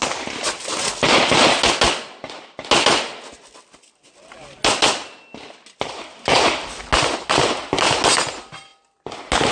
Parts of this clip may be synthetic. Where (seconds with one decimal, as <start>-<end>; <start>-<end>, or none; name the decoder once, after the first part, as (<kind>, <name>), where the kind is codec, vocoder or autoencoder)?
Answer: none